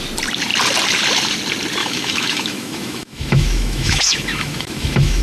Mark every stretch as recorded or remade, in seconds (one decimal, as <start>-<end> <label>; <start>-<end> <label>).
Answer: 0.0-1.8 recorded; 1.8-5.2 remade